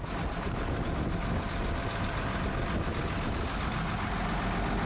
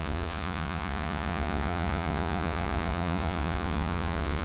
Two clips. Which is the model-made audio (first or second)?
second